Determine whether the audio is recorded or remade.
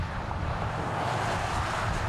recorded